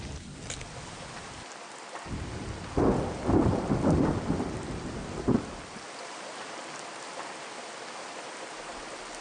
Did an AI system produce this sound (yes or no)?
no